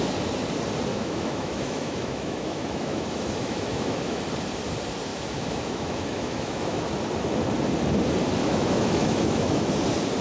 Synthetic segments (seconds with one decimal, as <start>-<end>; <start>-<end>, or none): 0.9-4.2; 5.1-6.8; 8.4-9.7